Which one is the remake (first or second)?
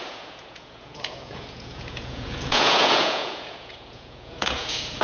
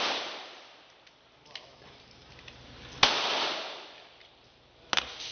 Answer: first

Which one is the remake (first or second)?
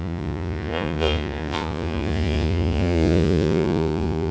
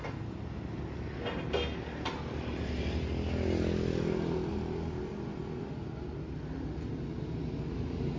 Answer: first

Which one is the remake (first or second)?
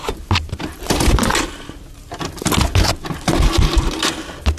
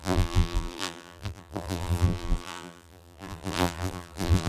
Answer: second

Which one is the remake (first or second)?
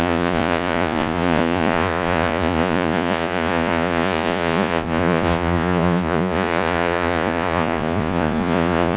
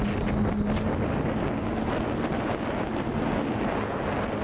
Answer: first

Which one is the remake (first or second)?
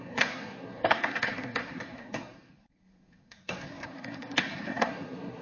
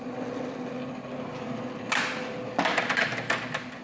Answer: first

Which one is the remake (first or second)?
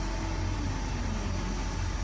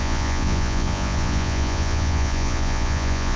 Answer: second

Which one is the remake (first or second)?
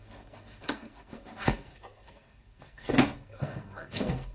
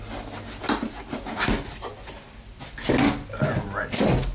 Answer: first